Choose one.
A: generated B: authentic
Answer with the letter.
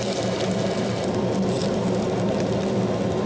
A